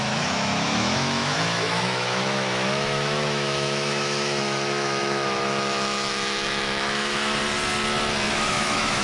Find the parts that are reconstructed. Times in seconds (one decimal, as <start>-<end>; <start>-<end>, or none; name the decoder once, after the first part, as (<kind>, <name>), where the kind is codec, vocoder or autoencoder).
0.0-7.4 (autoencoder, DAC-VAE); 8.3-9.0